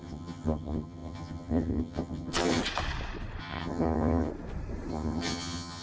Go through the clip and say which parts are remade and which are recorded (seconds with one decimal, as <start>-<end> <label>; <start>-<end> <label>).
0.0-2.6 remade; 2.6-3.4 recorded; 3.4-4.3 remade; 4.3-4.9 recorded; 4.9-5.8 remade